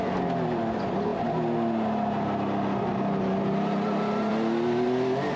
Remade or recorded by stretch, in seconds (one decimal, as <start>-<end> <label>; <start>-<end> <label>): 0.0-5.4 recorded